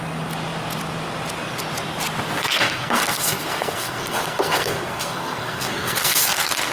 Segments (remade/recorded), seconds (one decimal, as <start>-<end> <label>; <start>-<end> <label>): 0.0-2.4 recorded; 2.4-6.7 remade